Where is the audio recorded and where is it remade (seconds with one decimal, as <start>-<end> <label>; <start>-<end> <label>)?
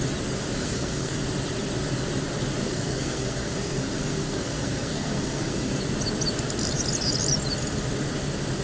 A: 0.0-0.6 recorded; 0.6-1.2 remade; 1.2-2.6 recorded; 2.6-5.7 remade; 5.7-8.6 recorded